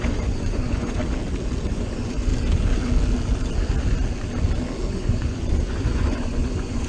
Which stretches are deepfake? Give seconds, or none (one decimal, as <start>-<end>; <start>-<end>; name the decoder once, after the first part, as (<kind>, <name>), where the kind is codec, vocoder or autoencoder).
0.0-1.0 (vocoder, Vocos); 1.6-2.3; 4.9-6.9